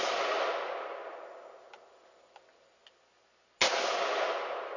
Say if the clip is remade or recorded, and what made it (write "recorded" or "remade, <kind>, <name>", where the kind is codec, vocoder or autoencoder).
recorded